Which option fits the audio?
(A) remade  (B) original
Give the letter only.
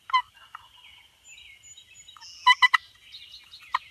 B